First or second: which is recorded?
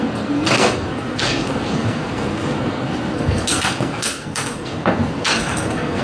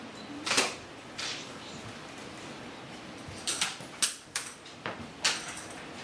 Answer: second